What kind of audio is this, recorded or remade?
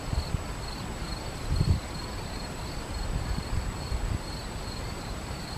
remade